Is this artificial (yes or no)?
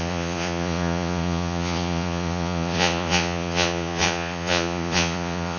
yes